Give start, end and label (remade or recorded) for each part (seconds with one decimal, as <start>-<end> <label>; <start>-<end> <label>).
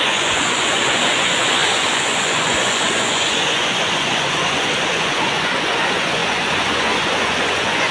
0.0-7.9 remade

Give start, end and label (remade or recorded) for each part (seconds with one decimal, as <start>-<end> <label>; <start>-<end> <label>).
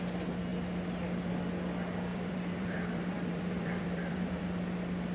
0.0-2.1 recorded; 2.1-4.4 remade; 4.4-5.1 recorded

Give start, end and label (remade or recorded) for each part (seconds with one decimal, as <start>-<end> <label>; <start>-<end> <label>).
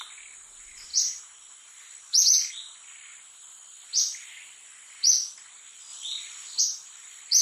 0.0-7.4 recorded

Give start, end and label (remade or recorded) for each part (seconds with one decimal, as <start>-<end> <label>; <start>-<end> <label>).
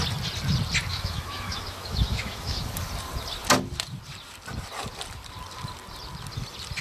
0.0-0.9 recorded; 0.9-2.7 remade; 2.7-6.8 recorded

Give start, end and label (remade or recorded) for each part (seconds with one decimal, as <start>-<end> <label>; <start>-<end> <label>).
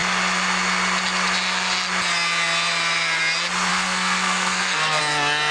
0.0-3.7 recorded; 3.7-5.0 remade; 5.0-5.5 recorded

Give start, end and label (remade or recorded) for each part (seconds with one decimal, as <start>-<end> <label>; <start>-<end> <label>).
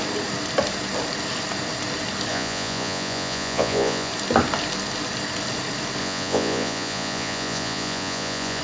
0.0-2.3 recorded; 2.3-4.1 remade; 4.1-6.0 recorded; 6.0-8.6 remade